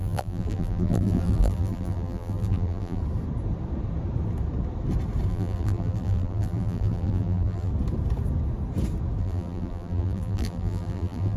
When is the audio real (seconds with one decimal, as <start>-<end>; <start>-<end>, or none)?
3.0-5.3; 7.7-9.2